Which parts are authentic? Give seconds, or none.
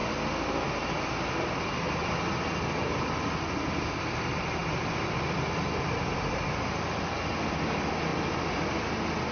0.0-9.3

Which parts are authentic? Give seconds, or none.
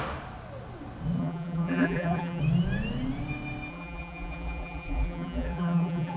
0.0-1.2; 2.4-3.7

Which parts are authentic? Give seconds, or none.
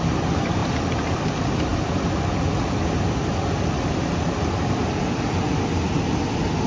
0.0-0.6; 1.1-1.7; 5.7-6.7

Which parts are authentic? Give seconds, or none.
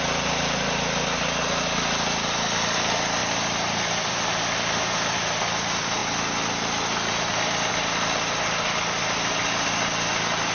0.0-10.5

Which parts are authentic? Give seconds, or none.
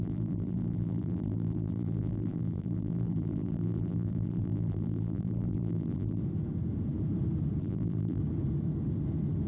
6.2-7.6; 8.2-9.5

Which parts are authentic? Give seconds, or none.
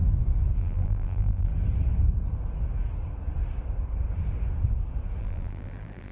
0.0-0.6; 1.5-5.2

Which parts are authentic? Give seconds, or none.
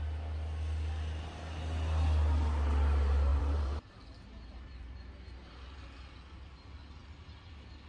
0.0-3.3; 5.8-7.9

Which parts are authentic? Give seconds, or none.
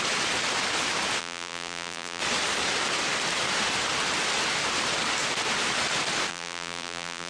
0.0-1.2; 2.2-6.3